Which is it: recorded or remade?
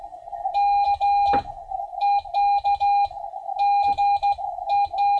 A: recorded